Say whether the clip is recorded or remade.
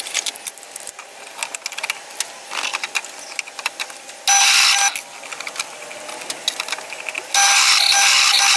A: recorded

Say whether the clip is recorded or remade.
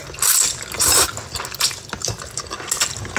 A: recorded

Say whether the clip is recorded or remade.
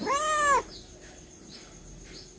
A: recorded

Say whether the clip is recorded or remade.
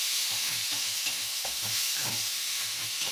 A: remade